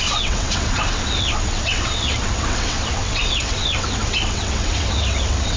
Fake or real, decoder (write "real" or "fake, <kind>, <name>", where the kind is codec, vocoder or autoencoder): fake, vocoder, WaveNeXt